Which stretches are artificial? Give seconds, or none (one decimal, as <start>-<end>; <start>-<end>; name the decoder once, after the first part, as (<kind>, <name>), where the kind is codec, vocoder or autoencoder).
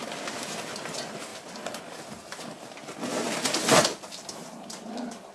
none